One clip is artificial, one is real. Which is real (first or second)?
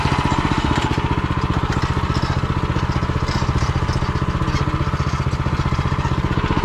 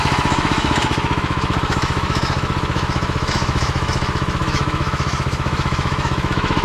first